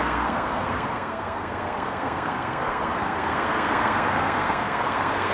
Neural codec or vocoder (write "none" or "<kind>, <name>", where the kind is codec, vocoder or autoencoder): codec, SNAC